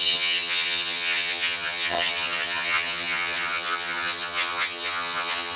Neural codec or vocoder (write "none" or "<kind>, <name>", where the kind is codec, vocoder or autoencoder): vocoder, HiFi-GAN